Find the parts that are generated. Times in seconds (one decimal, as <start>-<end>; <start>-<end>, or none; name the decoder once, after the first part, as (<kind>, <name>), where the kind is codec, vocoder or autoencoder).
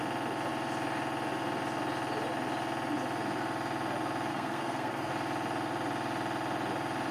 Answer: 4.3-5.1 (codec, SNAC)